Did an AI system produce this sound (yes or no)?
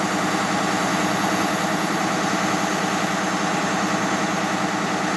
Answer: no